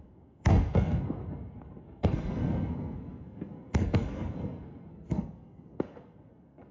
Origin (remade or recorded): remade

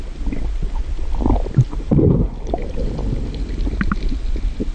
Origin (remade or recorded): recorded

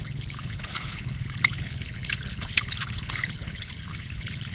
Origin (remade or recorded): remade